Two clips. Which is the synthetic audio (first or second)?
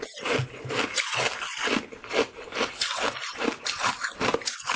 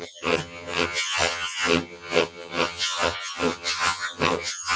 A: second